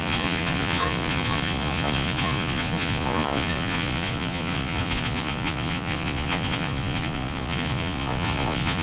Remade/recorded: remade